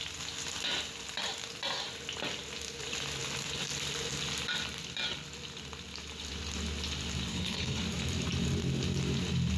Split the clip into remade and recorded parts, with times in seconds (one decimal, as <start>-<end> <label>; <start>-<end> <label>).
0.0-7.3 recorded; 7.3-7.8 remade; 7.8-9.6 recorded